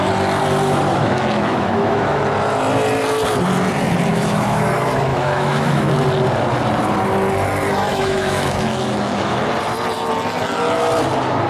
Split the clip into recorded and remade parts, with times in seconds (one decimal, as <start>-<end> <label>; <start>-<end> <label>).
0.0-1.0 recorded; 1.0-2.2 remade; 2.2-4.1 recorded; 4.1-4.6 remade; 4.6-5.1 recorded; 5.1-5.9 remade; 5.9-7.9 recorded; 7.9-9.4 remade; 9.4-11.5 recorded